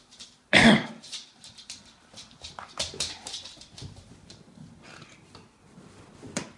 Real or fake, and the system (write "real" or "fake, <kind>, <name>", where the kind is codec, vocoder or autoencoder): fake, vocoder, BigVGAN v2